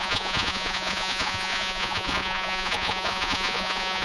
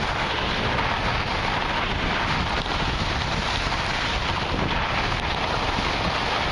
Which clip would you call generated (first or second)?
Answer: first